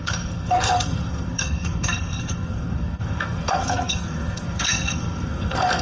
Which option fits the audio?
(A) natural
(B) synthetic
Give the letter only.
B